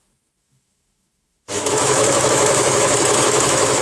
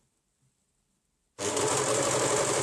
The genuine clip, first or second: second